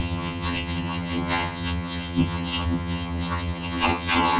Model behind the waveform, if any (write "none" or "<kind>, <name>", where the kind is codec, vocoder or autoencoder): vocoder, HiFi-GAN